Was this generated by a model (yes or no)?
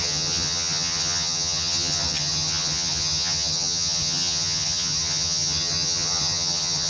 yes